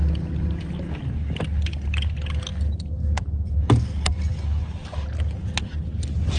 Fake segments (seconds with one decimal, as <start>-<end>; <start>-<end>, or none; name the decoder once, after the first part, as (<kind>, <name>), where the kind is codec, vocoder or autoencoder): none